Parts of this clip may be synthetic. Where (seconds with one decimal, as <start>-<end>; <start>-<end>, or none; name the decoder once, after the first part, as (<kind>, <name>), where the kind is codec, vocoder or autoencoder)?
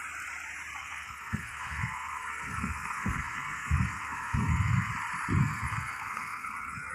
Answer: 0.8-4.9 (codec, SNAC); 5.4-6.9